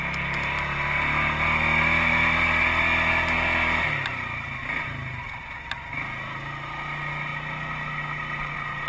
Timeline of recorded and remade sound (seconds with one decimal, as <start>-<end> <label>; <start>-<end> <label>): 0.0-8.9 recorded